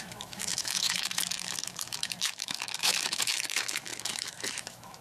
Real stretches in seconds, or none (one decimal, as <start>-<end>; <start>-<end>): none